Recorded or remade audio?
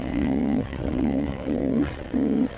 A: remade